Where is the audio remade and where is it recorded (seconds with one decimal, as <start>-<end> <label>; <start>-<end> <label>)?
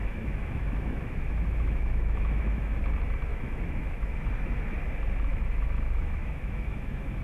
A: 0.0-2.8 remade; 2.8-3.3 recorded; 3.3-4.1 remade; 4.1-5.3 recorded; 5.3-7.2 remade